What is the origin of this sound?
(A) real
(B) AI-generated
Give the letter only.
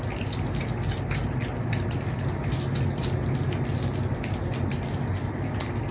A